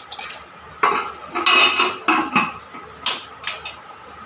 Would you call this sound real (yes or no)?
yes